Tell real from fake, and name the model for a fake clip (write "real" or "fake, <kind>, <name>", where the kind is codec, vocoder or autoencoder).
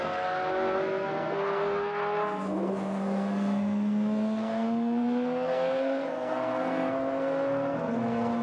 fake, codec, SNAC